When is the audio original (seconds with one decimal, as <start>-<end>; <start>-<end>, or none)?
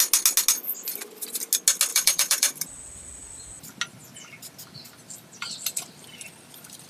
0.0-1.9; 3.0-6.9